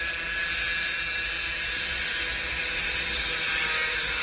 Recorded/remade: recorded